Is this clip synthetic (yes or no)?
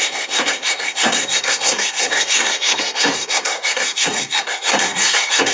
yes